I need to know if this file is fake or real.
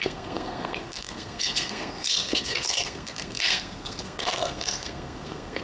fake